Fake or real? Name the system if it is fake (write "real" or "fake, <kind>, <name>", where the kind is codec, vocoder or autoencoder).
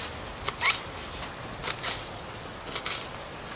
real